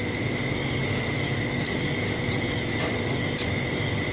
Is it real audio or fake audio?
real